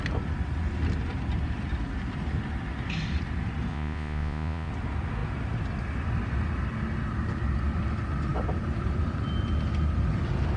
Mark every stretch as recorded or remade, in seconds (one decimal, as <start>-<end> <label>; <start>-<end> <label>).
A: 0.0-3.7 recorded; 3.7-4.7 remade; 4.7-10.6 recorded